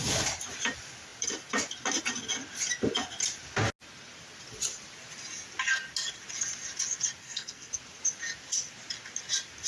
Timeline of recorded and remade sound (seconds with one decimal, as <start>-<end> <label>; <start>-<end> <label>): 0.0-7.2 recorded; 7.2-7.7 remade; 7.7-9.7 recorded